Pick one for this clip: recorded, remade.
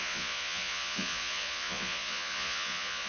remade